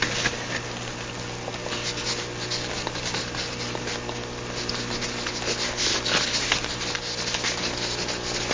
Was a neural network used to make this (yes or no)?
no